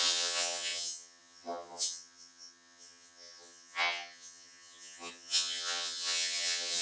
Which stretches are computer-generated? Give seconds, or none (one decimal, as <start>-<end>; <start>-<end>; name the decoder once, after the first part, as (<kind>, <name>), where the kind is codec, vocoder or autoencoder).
0.0-6.8 (vocoder, HiFi-GAN)